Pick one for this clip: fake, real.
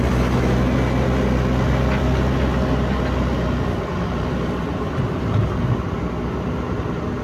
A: real